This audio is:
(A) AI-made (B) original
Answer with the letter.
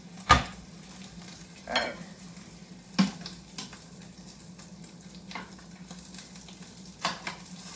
B